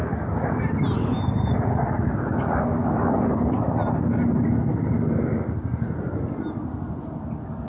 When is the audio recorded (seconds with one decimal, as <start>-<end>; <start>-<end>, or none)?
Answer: 0.0-7.7